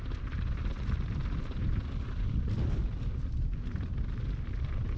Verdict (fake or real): real